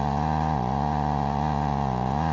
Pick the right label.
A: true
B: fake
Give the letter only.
B